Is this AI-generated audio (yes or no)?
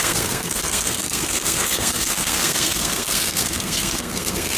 yes